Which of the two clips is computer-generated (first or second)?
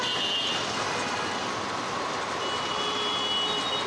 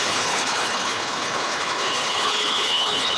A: second